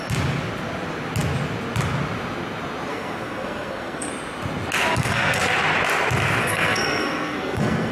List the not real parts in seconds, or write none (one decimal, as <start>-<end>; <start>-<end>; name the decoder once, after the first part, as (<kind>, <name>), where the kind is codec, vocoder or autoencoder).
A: 2.9-4.1 (codec, SNAC); 4.9-5.4; 6.4-7.9